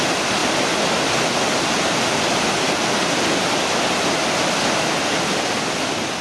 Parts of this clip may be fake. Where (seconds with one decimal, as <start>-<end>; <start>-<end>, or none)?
none